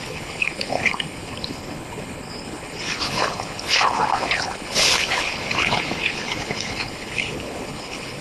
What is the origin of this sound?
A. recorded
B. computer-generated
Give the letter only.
B